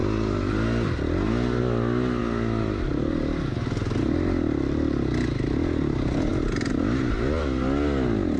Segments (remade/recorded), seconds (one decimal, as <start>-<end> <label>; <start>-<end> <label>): 0.0-8.4 recorded